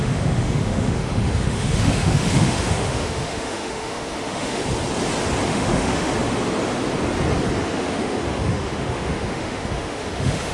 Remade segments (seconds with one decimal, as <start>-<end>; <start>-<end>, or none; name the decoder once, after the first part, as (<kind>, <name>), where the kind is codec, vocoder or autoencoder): 0.0-4.6 (autoencoder, DAC-VAE); 5.5-6.1; 7.6-10.5

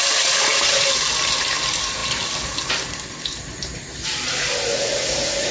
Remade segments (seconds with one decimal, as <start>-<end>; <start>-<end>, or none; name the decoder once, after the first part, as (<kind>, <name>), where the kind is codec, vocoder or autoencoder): none

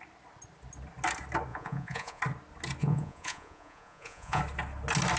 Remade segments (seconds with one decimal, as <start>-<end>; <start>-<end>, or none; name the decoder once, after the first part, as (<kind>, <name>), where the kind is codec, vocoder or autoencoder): 1.5-2.2 (vocoder, Vocos); 2.8-4.4

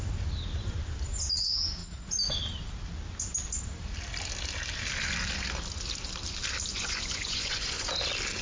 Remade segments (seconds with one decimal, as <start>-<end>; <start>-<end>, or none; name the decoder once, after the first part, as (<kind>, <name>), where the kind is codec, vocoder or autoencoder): 6.7-7.9 (vocoder, Vocos)